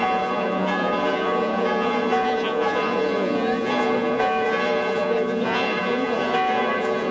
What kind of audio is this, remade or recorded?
remade